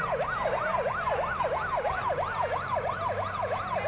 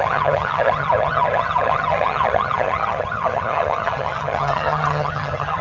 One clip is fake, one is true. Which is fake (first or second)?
second